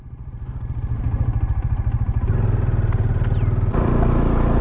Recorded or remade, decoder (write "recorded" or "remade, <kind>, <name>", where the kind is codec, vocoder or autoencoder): recorded